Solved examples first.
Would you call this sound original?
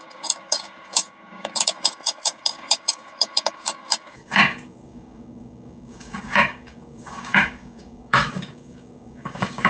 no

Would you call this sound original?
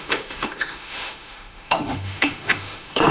no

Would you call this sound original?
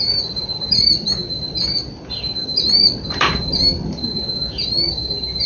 no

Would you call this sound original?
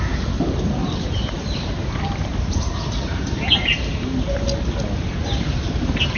yes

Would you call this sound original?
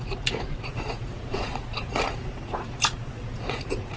no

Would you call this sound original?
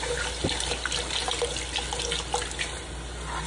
yes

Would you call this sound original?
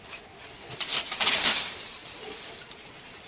no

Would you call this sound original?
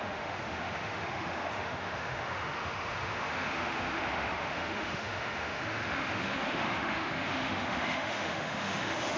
no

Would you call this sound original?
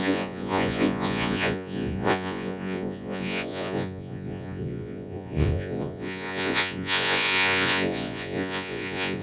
no